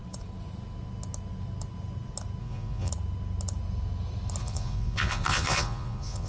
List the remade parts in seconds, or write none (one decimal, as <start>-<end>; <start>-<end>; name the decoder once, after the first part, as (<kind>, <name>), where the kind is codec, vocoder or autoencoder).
2.4-2.9 (vocoder, Vocos); 4.4-6.3